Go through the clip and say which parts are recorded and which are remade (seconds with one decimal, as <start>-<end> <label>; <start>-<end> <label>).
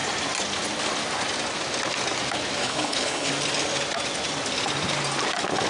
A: 0.0-2.6 recorded; 2.6-3.3 remade; 3.3-5.7 recorded